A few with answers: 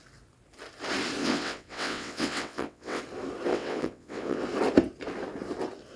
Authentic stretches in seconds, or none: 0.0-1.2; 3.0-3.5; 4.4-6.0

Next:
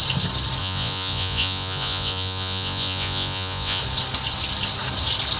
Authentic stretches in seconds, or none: 0.0-0.6; 3.8-5.4

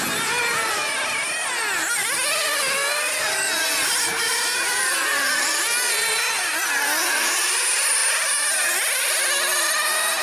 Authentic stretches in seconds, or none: 0.0-10.2

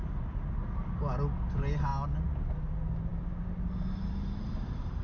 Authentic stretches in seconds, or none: 0.0-5.0

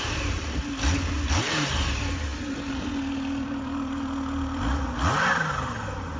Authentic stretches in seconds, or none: 0.0-6.2